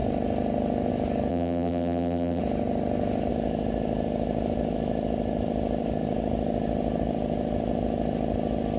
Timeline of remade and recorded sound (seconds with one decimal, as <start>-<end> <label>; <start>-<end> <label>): 0.0-1.3 recorded; 1.3-2.4 remade; 2.4-8.8 recorded